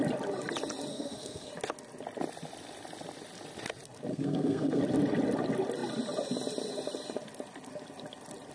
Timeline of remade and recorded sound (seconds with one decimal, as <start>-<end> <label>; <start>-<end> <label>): 0.0-0.9 recorded; 0.9-1.5 remade; 1.5-4.1 recorded; 4.1-4.8 remade; 4.8-8.5 recorded